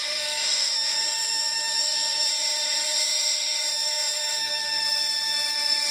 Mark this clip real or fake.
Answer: fake